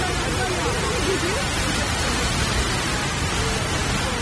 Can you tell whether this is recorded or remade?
recorded